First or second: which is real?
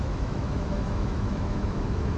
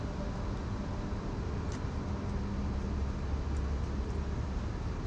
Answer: second